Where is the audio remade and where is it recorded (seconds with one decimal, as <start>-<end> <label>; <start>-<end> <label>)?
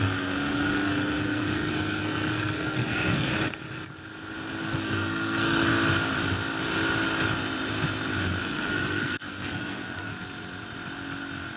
0.0-3.3 remade; 3.3-4.6 recorded; 4.6-5.7 remade; 5.7-8.4 recorded; 8.4-10.1 remade; 10.1-11.6 recorded